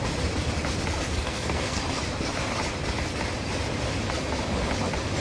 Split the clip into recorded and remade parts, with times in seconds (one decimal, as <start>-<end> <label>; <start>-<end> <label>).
0.0-1.1 recorded; 1.1-1.8 remade; 1.8-5.2 recorded